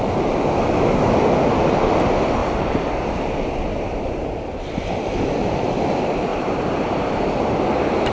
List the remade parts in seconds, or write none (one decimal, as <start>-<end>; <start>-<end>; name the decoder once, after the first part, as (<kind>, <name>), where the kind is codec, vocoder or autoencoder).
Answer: 2.4-4.2 (vocoder, BigVGAN v2); 6.3-7.6